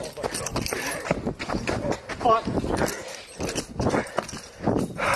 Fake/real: real